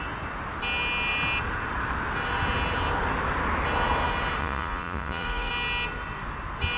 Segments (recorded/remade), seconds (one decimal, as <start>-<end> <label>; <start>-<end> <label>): 0.0-4.4 recorded; 4.4-5.5 remade; 5.5-6.8 recorded